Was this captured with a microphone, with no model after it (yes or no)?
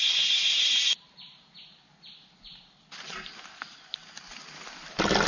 yes